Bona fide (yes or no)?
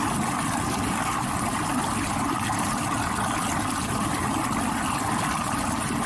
yes